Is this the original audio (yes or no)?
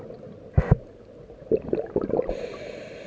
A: yes